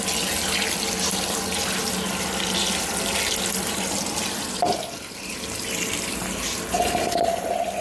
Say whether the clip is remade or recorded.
recorded